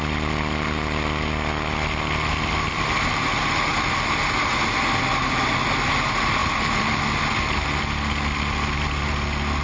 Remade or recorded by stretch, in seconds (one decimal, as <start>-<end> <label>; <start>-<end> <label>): 0.0-3.7 recorded; 3.7-4.7 remade; 4.7-6.4 recorded; 6.4-7.2 remade; 7.2-9.6 recorded